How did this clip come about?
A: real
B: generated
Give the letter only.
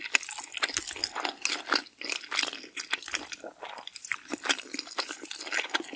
A